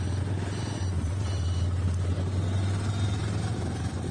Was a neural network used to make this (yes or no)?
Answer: no